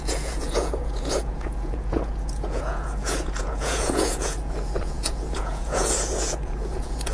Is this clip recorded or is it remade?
remade